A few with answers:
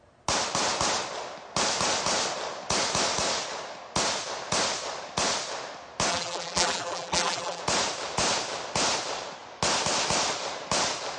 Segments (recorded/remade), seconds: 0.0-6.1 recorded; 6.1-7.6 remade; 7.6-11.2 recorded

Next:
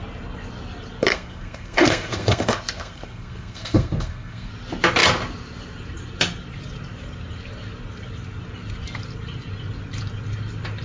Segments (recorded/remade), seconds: 0.0-1.1 recorded; 1.1-4.5 remade; 4.5-10.8 recorded

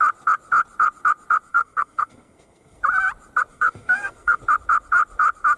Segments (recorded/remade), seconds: 0.0-1.5 recorded; 1.5-2.8 remade; 2.8-3.5 recorded; 3.5-4.4 remade; 4.4-5.6 recorded

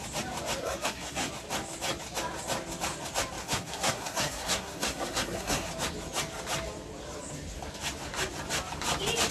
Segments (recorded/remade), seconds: 0.0-0.6 recorded; 0.6-1.3 remade; 1.3-3.4 recorded; 3.4-5.7 remade; 5.7-9.3 recorded